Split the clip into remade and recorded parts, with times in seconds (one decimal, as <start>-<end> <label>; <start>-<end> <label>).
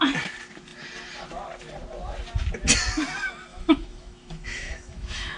0.0-3.5 recorded; 3.5-5.4 remade